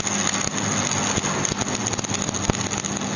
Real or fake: real